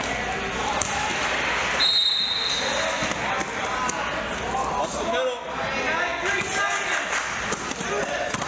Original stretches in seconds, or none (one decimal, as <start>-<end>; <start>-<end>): 0.0-8.5